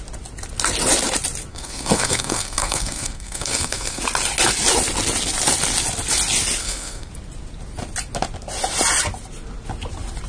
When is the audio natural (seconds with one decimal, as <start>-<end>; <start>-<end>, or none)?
0.0-1.5; 4.0-6.6; 7.1-10.3